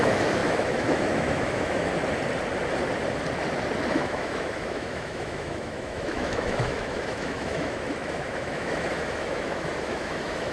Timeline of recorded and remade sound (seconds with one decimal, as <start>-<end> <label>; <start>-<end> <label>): 0.0-1.9 remade; 1.9-3.9 recorded; 3.9-10.5 remade